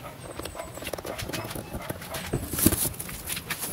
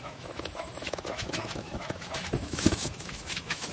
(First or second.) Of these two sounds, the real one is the first